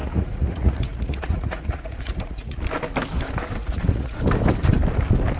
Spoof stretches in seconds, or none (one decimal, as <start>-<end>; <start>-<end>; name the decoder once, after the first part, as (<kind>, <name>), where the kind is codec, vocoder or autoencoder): 0.0-2.6 (vocoder, Vocos); 3.6-4.2